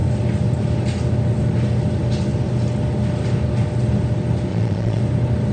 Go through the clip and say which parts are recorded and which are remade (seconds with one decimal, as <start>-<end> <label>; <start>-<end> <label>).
0.0-4.5 recorded; 4.5-5.0 remade; 5.0-5.5 recorded